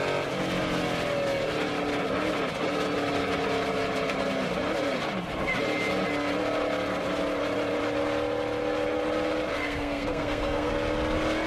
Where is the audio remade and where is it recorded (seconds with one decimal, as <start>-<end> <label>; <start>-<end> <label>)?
0.0-9.5 recorded; 9.5-10.7 remade; 10.7-11.5 recorded